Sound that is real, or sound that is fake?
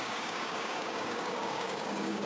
fake